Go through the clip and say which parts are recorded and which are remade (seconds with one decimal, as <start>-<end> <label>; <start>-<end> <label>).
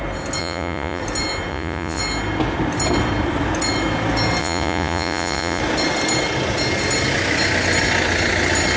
0.0-0.4 recorded; 0.4-1.0 remade; 1.0-1.5 recorded; 1.5-2.0 remade; 2.0-4.4 recorded; 4.4-5.6 remade; 5.6-8.8 recorded